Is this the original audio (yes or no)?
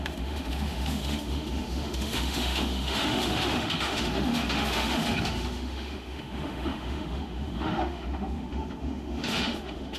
no